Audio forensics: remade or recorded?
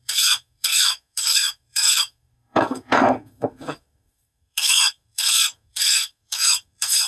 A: remade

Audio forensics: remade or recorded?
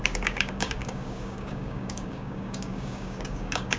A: remade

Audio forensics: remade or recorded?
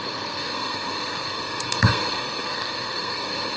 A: remade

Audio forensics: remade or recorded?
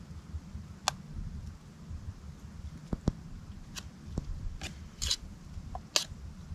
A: recorded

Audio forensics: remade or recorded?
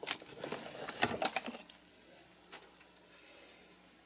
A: recorded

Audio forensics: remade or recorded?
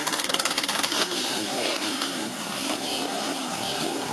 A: remade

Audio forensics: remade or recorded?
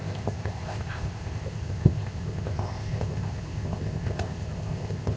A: remade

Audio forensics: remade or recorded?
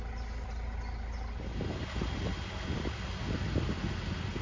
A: recorded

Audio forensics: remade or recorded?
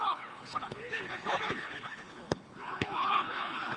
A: remade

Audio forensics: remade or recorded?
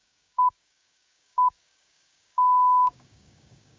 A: remade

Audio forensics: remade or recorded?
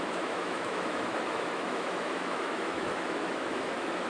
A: remade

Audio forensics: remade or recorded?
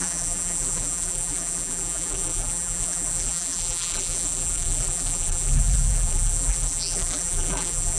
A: remade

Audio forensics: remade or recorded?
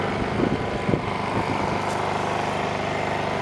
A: recorded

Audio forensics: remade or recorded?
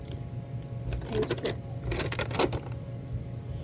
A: recorded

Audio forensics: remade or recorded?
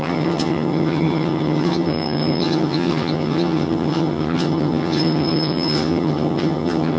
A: remade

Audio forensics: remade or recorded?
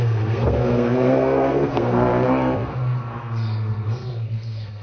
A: remade